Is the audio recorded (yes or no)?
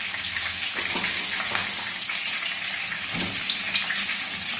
yes